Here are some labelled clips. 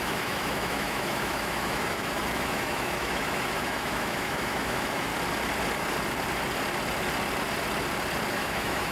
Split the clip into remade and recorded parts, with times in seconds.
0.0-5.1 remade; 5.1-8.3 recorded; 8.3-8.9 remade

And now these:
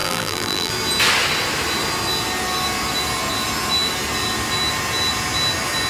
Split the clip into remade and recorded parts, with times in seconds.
0.0-0.7 remade; 0.7-5.9 recorded

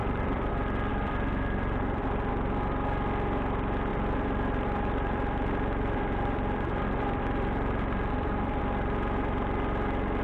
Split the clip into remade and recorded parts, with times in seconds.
0.0-0.5 remade; 0.5-0.9 recorded; 0.9-2.3 remade; 2.3-3.9 recorded; 3.9-8.6 remade; 8.6-10.2 recorded

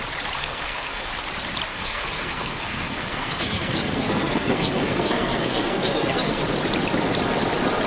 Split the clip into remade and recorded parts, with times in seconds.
0.0-0.4 recorded; 0.4-1.1 remade; 1.1-1.7 recorded; 1.7-6.4 remade; 6.4-7.9 recorded